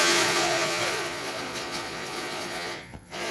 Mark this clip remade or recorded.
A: remade